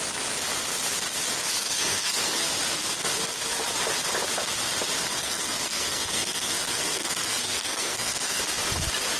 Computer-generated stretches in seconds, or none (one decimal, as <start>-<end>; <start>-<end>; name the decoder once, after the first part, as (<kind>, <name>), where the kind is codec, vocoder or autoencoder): 1.6-2.4 (codec, SNAC); 5.1-8.4